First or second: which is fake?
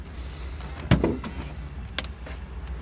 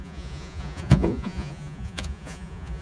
second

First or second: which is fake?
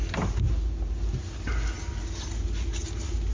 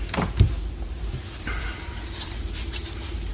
second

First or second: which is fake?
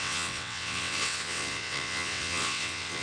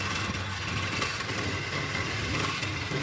first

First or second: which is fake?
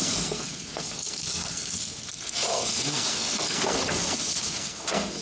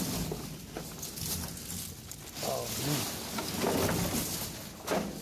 first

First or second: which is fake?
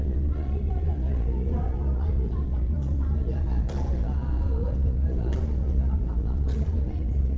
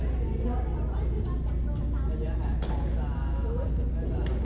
first